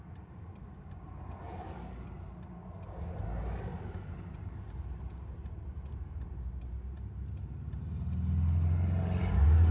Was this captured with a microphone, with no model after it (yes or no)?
yes